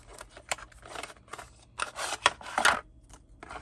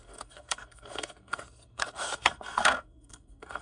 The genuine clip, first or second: first